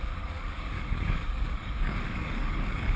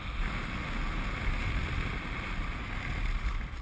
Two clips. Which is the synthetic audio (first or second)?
first